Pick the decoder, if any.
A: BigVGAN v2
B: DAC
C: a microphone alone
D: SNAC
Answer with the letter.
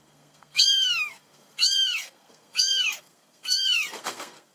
D